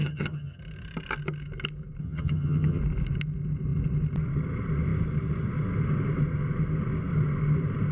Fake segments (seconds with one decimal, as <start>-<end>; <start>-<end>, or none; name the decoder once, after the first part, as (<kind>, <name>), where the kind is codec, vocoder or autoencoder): 0.0-0.6 (vocoder, HiFi-GAN); 2.0-2.8